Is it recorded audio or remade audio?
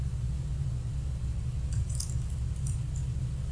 recorded